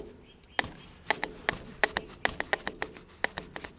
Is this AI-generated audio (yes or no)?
no